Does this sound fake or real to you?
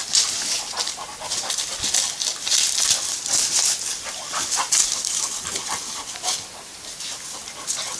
real